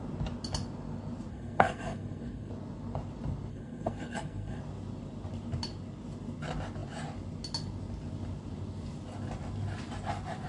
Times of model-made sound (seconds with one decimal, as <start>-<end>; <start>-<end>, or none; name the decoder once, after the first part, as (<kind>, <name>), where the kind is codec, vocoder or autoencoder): 1.3-2.5 (codec, SNAC); 3.5-4.6